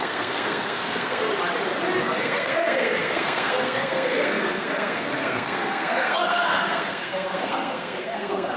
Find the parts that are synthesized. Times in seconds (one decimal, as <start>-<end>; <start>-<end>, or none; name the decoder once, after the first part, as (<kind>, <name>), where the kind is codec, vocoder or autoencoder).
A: 0.0-1.3 (codec, SNAC); 2.0-8.6